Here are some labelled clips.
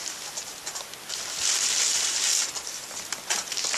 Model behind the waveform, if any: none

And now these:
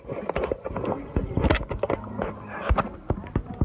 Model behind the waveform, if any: none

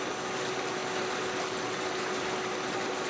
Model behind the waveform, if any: none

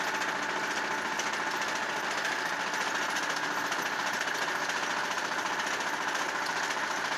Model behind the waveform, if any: none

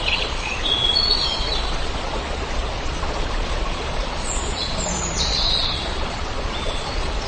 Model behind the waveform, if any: vocoder, Vocos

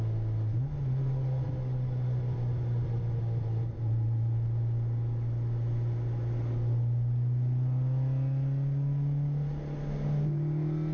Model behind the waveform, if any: none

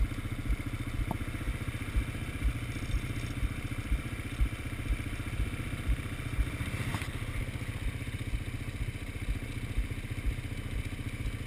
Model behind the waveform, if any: none